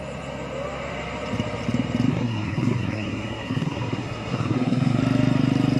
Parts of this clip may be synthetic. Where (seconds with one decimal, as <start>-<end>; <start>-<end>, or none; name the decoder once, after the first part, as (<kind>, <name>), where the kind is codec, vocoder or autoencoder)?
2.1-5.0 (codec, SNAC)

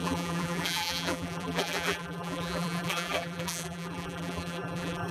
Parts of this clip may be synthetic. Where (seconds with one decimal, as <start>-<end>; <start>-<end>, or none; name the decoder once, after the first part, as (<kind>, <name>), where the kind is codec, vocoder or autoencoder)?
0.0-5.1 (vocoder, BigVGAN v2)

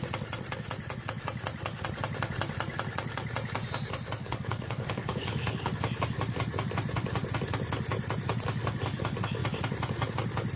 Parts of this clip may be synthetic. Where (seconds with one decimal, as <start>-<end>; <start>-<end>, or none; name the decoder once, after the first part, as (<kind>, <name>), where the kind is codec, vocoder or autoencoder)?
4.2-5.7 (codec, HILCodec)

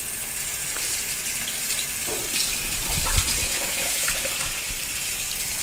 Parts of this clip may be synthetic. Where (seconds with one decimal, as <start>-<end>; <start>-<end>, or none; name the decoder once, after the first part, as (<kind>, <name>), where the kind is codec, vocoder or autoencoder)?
3.4-4.0 (autoencoder, DAC-VAE)

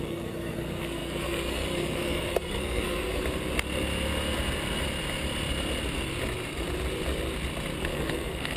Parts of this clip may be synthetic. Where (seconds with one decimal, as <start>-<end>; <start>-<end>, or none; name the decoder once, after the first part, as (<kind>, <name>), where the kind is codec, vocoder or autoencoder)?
0.0-3.2 (codec, SNAC); 7.8-8.6